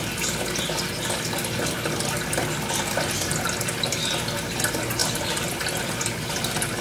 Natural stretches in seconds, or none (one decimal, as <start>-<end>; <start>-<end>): 0.0-6.8